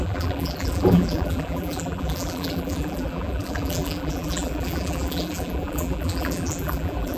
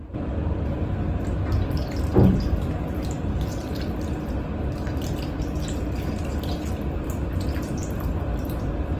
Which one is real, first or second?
second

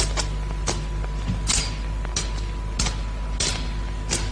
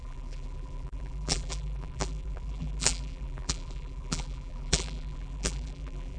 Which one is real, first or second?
first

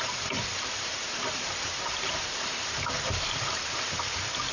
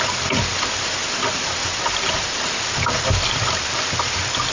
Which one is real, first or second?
second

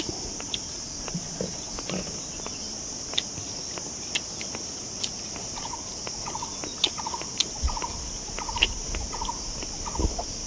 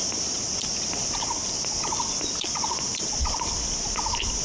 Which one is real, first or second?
first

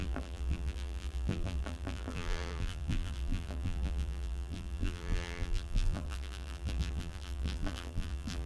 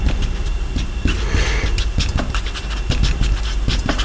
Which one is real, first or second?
second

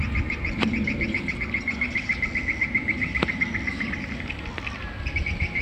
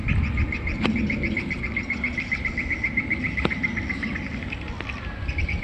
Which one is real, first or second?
first